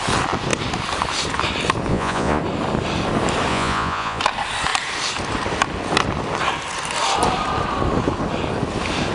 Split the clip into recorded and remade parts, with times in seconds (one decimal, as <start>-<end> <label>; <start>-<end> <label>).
0.0-1.9 recorded; 1.9-2.4 remade; 2.4-3.5 recorded; 3.5-4.2 remade; 4.2-9.1 recorded